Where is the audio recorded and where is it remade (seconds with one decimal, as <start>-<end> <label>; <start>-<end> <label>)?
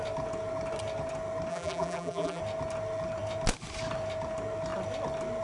0.0-1.5 recorded; 1.5-2.4 remade; 2.4-5.4 recorded